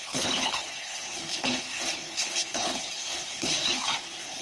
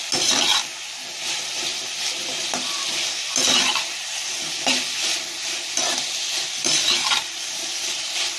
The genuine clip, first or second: second